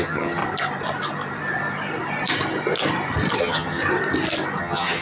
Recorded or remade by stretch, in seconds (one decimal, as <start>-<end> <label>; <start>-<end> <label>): 0.0-0.4 remade; 0.4-3.4 recorded; 3.4-3.8 remade; 3.8-4.6 recorded; 4.6-5.0 remade